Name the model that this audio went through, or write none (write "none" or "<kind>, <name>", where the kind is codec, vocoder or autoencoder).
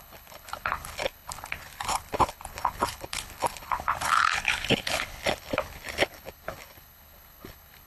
codec, HILCodec